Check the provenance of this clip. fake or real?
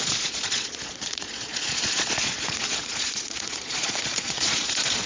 fake